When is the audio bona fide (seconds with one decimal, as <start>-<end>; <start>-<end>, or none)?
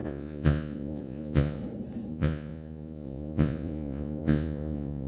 1.6-2.1